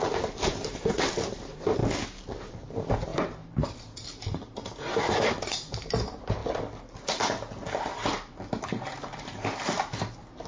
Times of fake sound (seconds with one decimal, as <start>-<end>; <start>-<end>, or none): 0.0-1.8; 2.5-6.4; 7.8-10.5

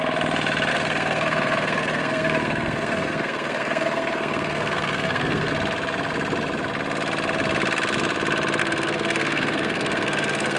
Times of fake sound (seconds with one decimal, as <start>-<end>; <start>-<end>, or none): 0.7-5.5; 8.6-10.6